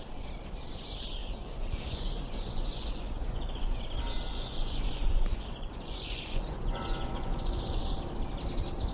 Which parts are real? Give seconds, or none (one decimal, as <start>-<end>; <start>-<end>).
0.0-1.2; 3.8-4.3; 7.8-8.9